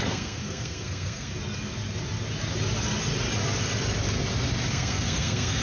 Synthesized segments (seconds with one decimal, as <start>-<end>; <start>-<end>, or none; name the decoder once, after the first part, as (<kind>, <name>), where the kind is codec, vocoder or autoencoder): 0.0-1.3 (codec, SNAC); 4.7-5.6